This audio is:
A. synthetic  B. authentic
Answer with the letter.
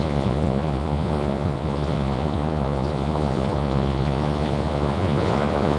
A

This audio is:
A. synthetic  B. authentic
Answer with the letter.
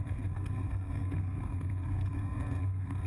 A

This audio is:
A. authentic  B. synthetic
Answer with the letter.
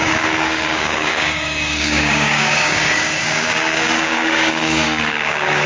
B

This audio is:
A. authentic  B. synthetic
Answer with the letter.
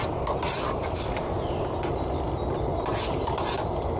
A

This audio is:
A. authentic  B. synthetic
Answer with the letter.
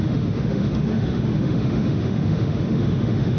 B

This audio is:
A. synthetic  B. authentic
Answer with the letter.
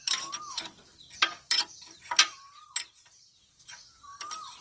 A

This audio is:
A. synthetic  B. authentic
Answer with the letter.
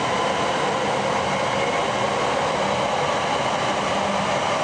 B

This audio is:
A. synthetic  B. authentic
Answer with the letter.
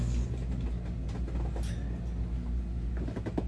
B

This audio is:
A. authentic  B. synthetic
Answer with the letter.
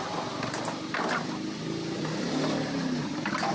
A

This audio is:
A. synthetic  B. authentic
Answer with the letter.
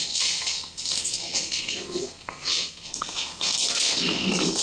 A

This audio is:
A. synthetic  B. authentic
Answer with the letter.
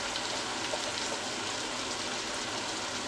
B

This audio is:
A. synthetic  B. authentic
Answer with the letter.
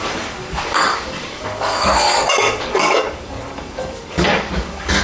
A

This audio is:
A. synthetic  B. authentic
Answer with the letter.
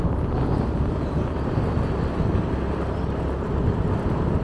B